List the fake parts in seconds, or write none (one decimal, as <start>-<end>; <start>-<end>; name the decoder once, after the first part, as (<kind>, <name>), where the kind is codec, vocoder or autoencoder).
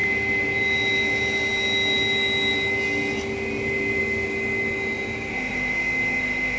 5.3-6.6 (autoencoder, DAC-VAE)